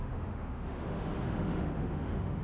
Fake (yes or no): yes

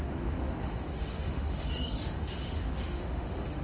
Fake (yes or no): yes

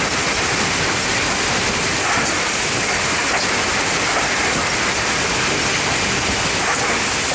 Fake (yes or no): no